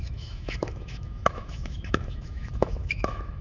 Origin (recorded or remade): remade